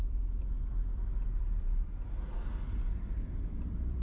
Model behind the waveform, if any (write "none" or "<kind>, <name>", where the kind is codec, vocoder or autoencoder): vocoder, BigVGAN v2